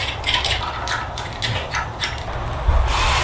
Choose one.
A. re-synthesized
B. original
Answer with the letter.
A